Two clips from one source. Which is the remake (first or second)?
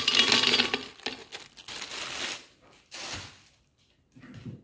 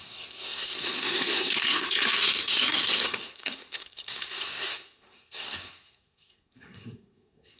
second